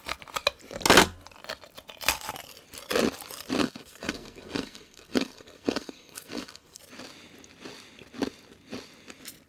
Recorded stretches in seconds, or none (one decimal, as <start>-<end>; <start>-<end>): 0.0-3.6; 6.8-9.5